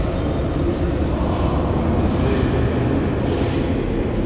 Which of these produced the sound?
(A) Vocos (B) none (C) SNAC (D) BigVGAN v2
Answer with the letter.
B